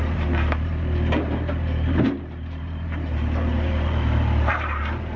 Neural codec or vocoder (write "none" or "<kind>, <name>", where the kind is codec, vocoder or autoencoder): vocoder, BigVGAN v2